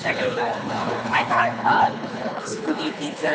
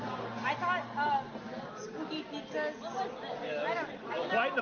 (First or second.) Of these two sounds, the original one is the second